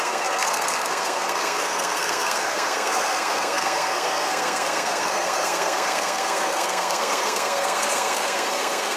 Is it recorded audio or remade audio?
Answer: remade